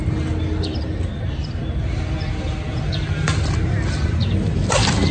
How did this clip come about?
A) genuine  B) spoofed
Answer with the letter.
A